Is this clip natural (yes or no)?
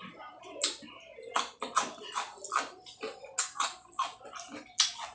yes